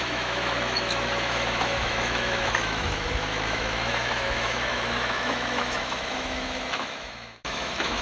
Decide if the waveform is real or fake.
fake